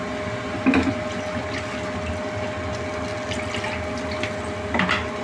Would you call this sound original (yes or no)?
yes